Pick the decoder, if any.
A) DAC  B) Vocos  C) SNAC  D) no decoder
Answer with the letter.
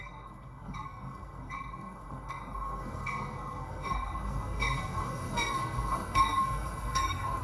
C